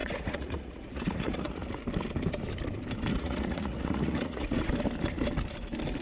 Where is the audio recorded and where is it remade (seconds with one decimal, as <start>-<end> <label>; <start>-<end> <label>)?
0.0-1.8 remade; 1.8-3.1 recorded; 3.1-4.7 remade; 4.7-6.0 recorded